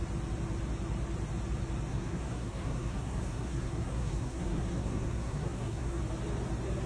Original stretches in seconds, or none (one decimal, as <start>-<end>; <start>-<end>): 0.0-1.9; 6.0-6.9